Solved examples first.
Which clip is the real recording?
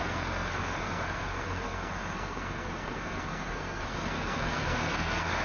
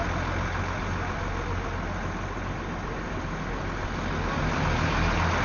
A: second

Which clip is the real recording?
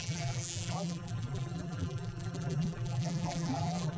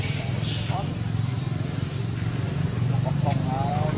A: second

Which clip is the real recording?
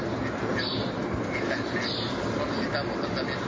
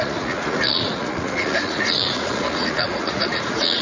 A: first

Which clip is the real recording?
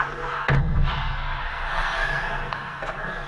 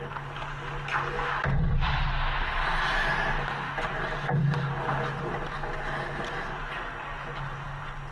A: second